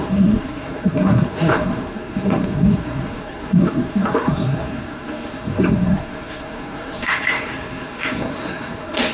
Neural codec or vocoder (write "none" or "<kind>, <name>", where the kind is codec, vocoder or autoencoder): codec, SNAC